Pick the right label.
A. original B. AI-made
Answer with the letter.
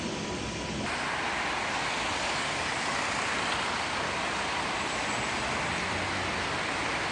A